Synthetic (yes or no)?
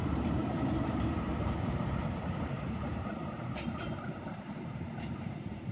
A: yes